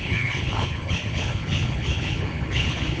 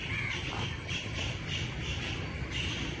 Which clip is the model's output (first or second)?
first